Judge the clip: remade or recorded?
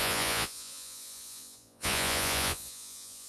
remade